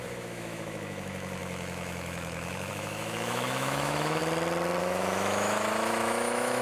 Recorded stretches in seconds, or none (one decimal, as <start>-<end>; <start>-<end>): 4.2-4.8